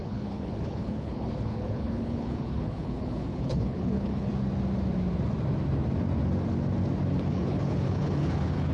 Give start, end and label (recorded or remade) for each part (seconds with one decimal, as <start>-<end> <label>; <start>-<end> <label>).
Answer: 0.0-4.3 remade; 4.3-7.3 recorded; 7.3-8.7 remade